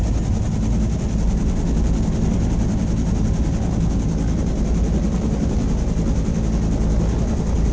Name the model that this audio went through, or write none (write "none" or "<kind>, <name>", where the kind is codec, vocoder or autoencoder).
none